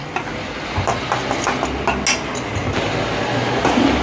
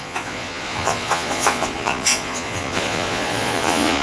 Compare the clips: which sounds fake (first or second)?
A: second